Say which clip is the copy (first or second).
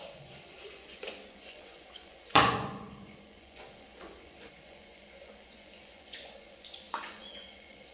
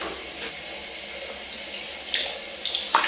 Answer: first